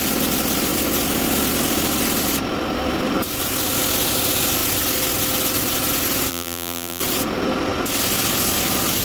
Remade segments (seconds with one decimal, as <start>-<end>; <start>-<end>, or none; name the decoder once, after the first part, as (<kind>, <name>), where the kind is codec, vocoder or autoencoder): 6.3-7.0 (vocoder, BigVGAN v2)